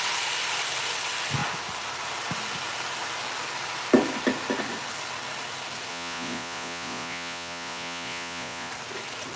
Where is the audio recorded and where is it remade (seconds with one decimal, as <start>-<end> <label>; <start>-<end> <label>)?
0.0-5.9 recorded; 5.9-8.7 remade; 8.7-9.4 recorded